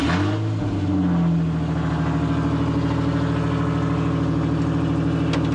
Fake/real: real